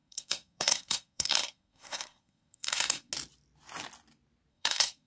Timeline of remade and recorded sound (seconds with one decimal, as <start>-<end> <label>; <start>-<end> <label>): 0.0-3.1 remade; 3.1-4.5 recorded; 4.5-5.1 remade